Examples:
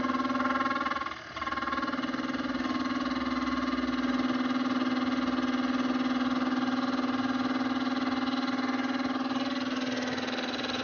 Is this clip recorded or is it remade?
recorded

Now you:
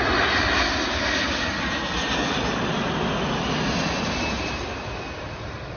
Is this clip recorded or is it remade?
recorded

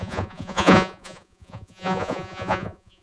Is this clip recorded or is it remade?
remade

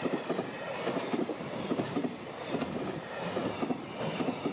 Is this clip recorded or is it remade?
remade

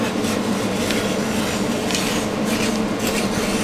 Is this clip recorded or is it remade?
recorded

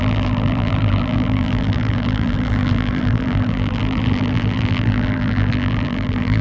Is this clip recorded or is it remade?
remade